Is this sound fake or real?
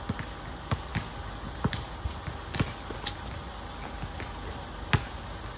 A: real